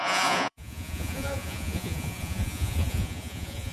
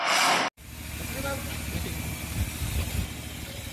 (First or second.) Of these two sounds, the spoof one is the first